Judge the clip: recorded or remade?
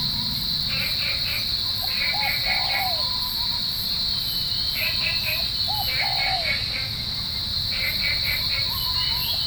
recorded